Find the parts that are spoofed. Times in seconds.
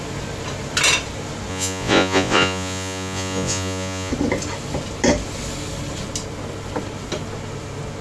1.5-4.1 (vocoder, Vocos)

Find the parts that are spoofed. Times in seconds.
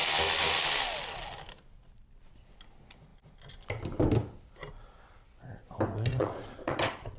6.1-7.2 (vocoder, Vocos)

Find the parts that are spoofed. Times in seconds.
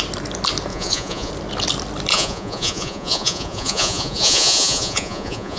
0.7-1.3 (vocoder, Vocos); 2.1-5.6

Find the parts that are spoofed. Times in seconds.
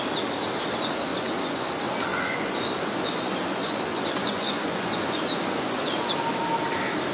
1.1-1.7 (vocoder, Vocos); 2.1-6.1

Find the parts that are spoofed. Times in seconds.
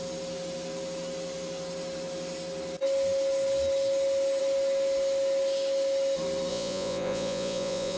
6.5-8.0 (vocoder, Vocos)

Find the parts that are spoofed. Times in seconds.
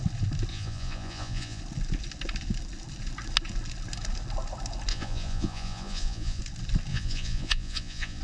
0.5-1.6 (vocoder, Vocos); 4.9-6.4; 6.9-8.2